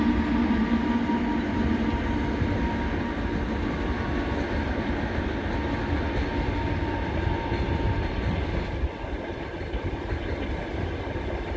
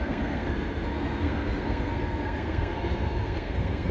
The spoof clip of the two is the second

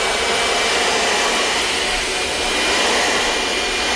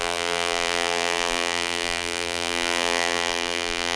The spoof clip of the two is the second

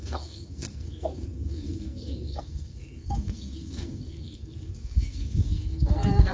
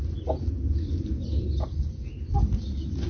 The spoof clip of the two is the first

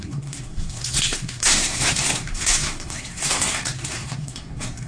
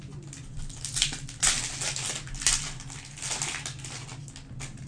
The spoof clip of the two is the first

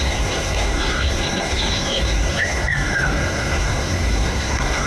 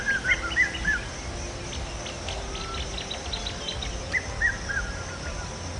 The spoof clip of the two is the first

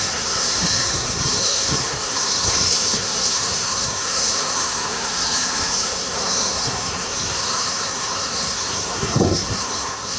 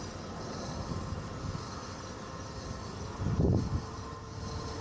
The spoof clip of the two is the first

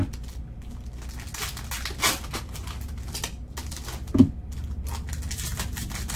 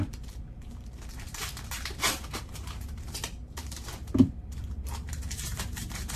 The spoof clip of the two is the second